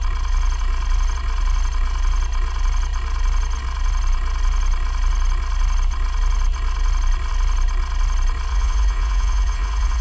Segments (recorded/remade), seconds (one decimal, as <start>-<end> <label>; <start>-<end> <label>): 0.0-8.5 recorded; 8.5-10.0 remade